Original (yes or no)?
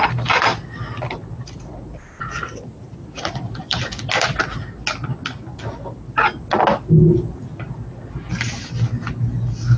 yes